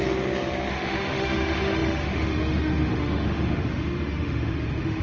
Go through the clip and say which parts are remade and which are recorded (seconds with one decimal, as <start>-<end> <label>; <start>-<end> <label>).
0.0-0.7 recorded; 0.7-5.0 remade